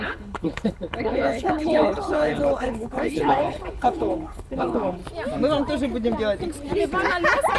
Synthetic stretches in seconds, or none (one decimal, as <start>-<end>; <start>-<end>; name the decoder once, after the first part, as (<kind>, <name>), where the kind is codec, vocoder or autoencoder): 0.0-5.0 (codec, HILCodec)